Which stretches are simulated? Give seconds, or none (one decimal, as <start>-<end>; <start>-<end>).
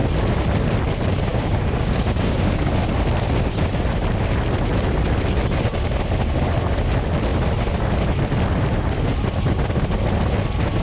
1.3-2.7